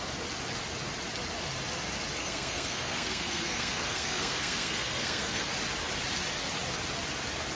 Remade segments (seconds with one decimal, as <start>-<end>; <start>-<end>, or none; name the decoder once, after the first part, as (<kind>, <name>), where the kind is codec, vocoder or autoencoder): 2.2-5.5 (codec, SNAC)